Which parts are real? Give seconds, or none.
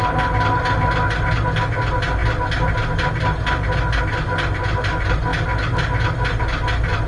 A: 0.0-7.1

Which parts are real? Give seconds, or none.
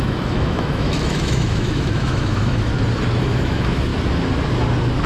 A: 2.7-3.2; 3.9-5.1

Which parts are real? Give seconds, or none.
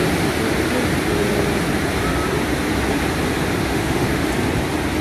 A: 0.0-3.6; 4.3-5.0